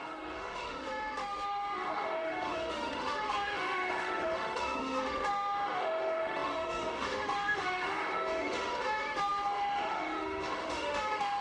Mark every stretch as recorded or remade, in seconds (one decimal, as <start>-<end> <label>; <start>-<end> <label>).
0.0-11.4 remade